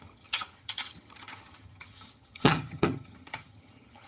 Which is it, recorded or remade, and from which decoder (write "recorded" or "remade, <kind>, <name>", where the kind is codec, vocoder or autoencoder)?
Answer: remade, vocoder, HiFi-GAN